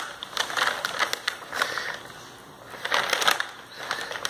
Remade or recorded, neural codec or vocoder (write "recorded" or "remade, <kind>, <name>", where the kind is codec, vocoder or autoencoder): recorded